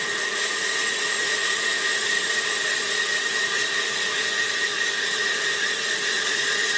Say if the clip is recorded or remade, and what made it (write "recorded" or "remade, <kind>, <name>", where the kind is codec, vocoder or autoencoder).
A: remade, vocoder, Vocos